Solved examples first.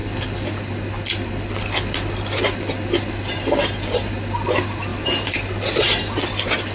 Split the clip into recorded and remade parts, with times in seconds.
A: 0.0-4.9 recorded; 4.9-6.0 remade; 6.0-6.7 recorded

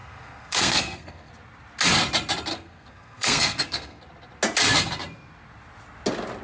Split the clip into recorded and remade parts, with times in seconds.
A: 0.0-1.3 remade; 1.3-2.5 recorded; 2.5-4.0 remade; 4.0-6.4 recorded

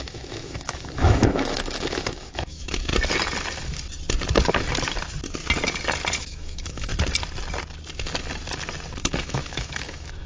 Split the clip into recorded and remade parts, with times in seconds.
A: 0.0-2.9 remade; 2.9-6.2 recorded; 6.2-6.9 remade; 6.9-9.0 recorded; 9.0-10.3 remade